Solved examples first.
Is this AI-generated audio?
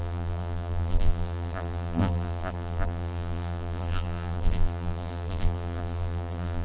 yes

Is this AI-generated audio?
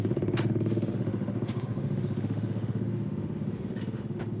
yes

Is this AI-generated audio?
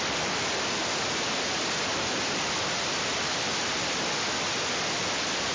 no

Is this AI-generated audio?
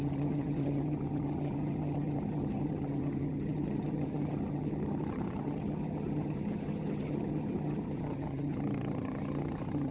yes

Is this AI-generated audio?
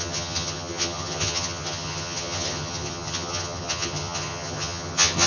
yes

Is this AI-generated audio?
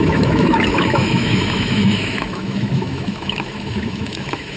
yes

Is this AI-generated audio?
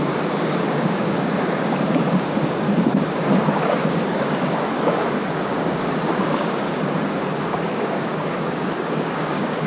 yes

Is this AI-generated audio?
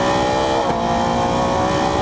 no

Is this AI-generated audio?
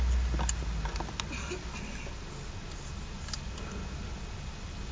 no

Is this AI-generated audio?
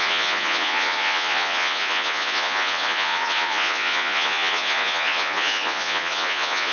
yes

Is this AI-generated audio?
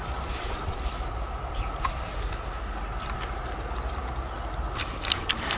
no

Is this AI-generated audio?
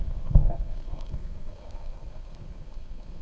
yes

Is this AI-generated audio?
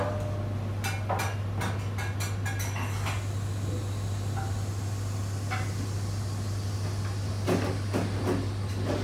no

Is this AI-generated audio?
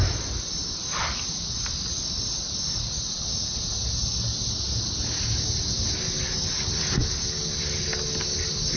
no